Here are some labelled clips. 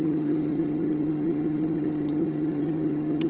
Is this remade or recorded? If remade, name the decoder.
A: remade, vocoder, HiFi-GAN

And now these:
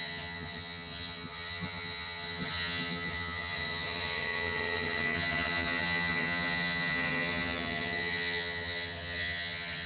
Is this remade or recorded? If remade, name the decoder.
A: remade, vocoder, HiFi-GAN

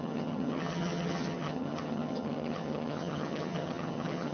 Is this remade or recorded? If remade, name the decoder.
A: remade, vocoder, HiFi-GAN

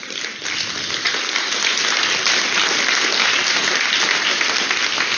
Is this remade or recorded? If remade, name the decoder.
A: recorded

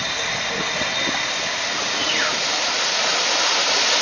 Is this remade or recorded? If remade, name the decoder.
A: recorded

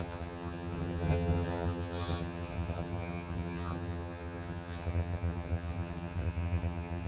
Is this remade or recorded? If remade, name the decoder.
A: remade, vocoder, HiFi-GAN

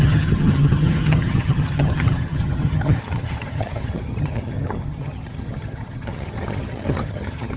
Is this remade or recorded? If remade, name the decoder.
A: remade, vocoder, HiFi-GAN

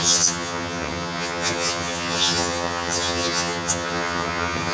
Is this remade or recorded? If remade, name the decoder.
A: remade, vocoder, HiFi-GAN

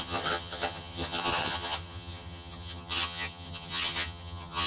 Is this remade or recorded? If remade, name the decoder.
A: remade, vocoder, HiFi-GAN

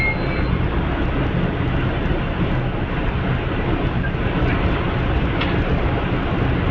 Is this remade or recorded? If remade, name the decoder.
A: recorded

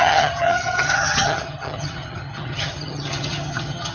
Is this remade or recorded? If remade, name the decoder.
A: remade, vocoder, HiFi-GAN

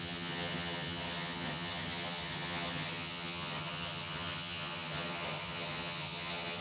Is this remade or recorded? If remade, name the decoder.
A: remade, vocoder, HiFi-GAN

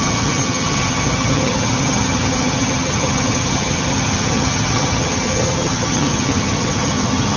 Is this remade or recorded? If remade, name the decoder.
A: remade, vocoder, HiFi-GAN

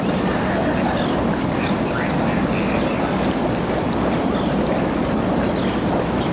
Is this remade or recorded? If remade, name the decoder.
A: recorded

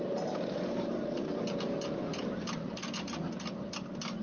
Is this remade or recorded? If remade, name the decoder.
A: recorded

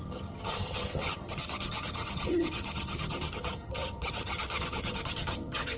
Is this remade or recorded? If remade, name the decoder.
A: remade, vocoder, HiFi-GAN